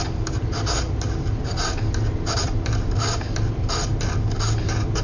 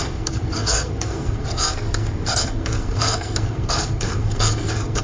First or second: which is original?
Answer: first